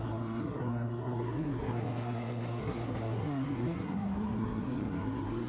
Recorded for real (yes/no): no